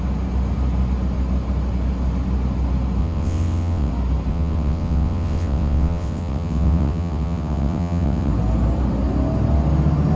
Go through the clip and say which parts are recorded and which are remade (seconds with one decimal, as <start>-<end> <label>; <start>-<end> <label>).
0.0-3.0 recorded; 3.0-3.9 remade; 3.9-4.3 recorded; 4.3-8.3 remade; 8.3-10.2 recorded